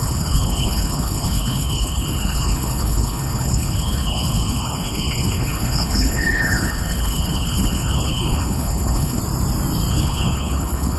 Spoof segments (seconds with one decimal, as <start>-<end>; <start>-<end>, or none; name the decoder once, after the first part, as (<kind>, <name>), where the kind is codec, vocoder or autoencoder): 0.0-9.2 (codec, HILCodec); 9.9-11.0